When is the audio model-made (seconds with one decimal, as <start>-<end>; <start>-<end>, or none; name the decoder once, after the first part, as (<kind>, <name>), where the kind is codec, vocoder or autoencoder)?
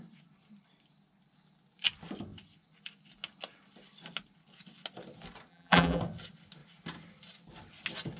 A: 5.5-6.0 (vocoder, BigVGAN v2)